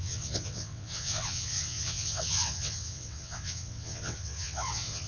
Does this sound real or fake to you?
fake